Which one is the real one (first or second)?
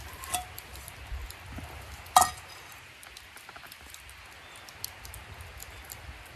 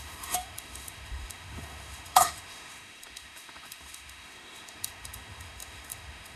first